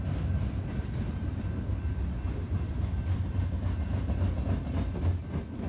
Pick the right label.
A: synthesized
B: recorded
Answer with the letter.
B